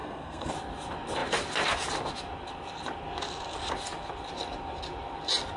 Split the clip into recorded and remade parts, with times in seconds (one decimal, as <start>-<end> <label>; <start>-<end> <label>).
0.0-0.5 remade; 0.5-5.6 recorded